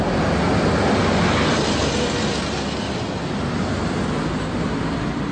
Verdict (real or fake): real